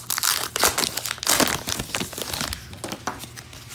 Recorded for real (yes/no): yes